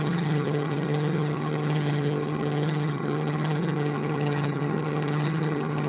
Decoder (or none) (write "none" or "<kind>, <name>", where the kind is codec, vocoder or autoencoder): vocoder, HiFi-GAN